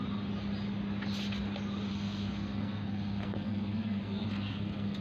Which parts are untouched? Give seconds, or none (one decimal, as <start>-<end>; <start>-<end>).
0.0-1.9